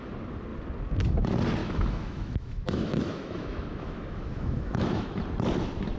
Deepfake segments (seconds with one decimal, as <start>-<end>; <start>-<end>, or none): 1.6-5.2